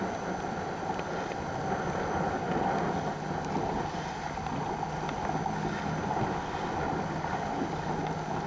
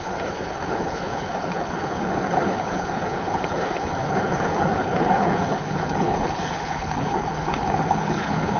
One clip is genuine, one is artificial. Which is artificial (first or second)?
second